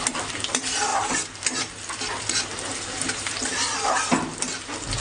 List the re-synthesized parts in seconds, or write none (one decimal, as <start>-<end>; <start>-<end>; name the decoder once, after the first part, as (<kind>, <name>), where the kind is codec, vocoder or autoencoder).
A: 2.7-4.1 (vocoder, BigVGAN v2)